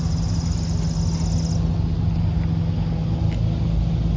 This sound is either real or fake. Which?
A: real